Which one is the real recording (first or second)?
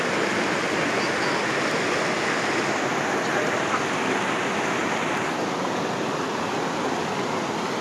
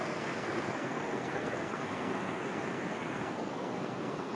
first